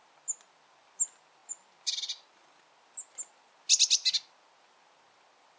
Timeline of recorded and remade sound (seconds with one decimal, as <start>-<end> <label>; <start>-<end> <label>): 0.0-5.6 recorded